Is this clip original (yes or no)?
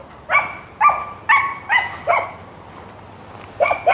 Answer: yes